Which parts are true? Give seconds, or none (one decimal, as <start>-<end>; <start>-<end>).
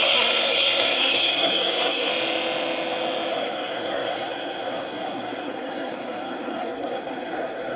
2.1-3.3